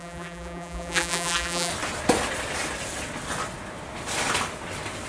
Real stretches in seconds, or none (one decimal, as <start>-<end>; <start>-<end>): 1.7-5.1